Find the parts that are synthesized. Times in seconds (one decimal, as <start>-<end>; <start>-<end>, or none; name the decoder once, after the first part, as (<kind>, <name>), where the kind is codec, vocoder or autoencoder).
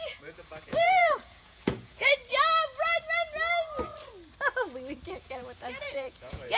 0.0-2.2 (vocoder, Vocos); 5.1-6.6